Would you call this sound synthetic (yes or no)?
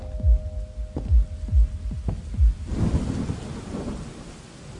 no